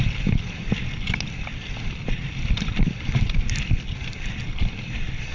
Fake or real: real